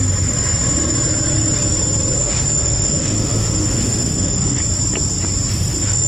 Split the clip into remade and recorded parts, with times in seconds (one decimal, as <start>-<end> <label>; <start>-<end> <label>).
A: 0.0-2.2 recorded; 2.2-4.6 remade; 4.6-5.5 recorded; 5.5-6.1 remade